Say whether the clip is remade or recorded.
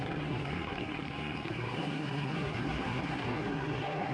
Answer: remade